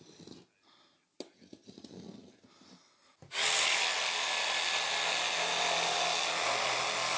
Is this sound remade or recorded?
recorded